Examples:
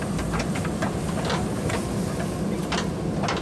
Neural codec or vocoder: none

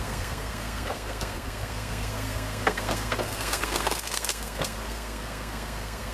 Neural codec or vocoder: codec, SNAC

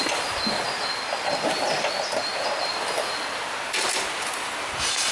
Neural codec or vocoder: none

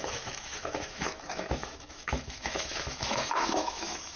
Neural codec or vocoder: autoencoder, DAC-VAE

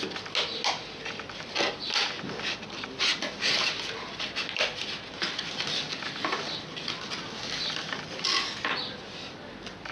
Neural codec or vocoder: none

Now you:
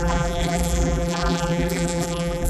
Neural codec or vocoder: vocoder, BigVGAN v2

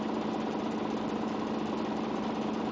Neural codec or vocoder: none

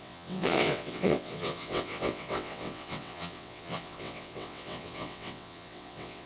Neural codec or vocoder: vocoder, WaveNeXt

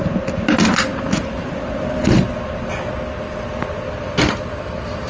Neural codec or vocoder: none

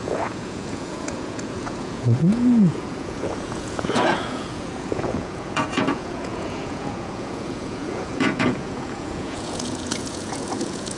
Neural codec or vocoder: vocoder, Vocos